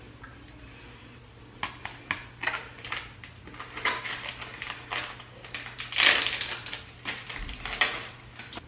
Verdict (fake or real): real